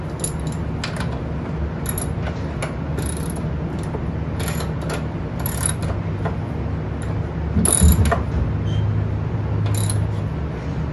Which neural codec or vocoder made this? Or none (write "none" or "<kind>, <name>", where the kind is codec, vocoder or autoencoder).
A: none